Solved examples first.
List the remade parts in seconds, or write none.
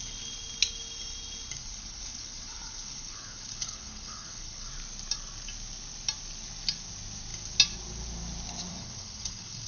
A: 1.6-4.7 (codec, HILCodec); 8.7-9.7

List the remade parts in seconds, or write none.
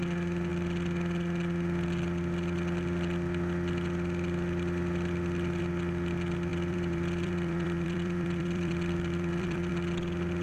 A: 6.5-9.7 (vocoder, BigVGAN v2)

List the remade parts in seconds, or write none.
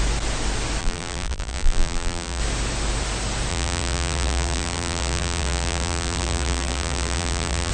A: 0.8-2.4 (vocoder, BigVGAN v2); 3.5-7.7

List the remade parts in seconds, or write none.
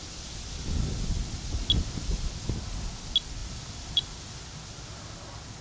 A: 0.0-1.2 (vocoder, BigVGAN v2); 3.4-4.3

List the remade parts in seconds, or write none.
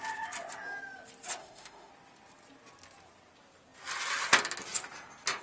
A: 1.4-1.9 (autoencoder, DAC-VAE)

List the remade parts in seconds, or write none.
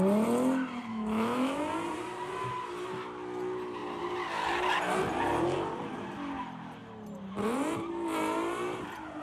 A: 0.9-1.6 (autoencoder, DAC-VAE)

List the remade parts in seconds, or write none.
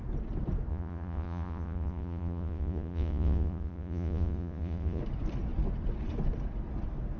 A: 0.7-5.0 (vocoder, Vocos)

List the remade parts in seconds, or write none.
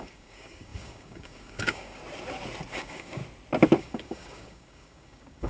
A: 0.0-2.0 (codec, DAC); 2.7-3.2; 3.8-5.5